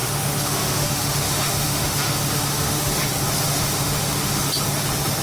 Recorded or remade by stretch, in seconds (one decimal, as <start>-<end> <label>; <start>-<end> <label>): 0.0-3.1 remade; 3.1-3.5 recorded; 3.5-4.4 remade; 4.4-5.2 recorded